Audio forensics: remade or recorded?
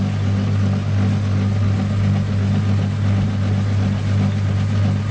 recorded